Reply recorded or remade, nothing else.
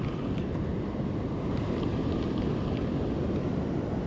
recorded